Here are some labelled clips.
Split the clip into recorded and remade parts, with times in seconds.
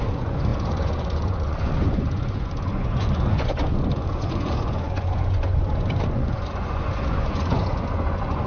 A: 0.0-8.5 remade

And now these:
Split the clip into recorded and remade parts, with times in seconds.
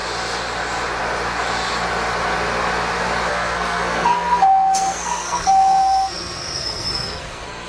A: 0.0-3.3 recorded; 3.3-7.7 remade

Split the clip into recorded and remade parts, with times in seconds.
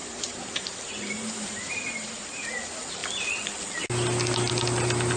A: 0.0-2.5 remade; 2.5-5.2 recorded